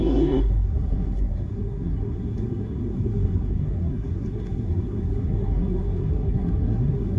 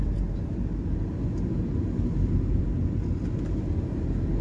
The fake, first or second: first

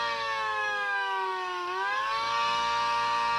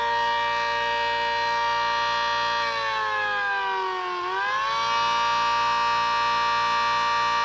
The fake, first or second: first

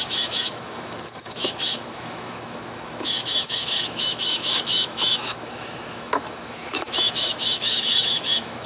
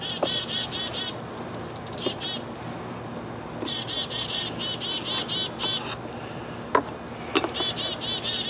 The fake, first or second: first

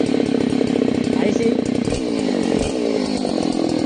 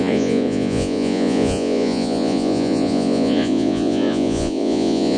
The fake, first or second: second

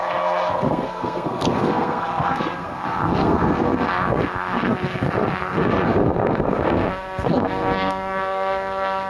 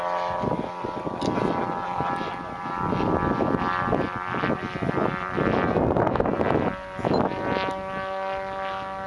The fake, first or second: first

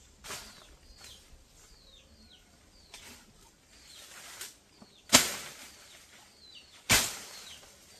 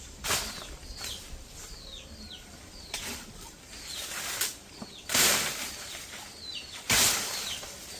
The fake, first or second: second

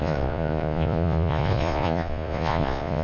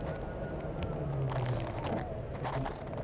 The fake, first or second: first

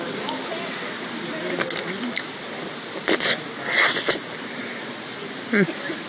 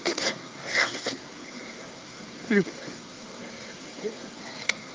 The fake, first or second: second